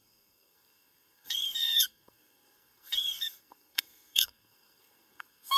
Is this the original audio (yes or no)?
no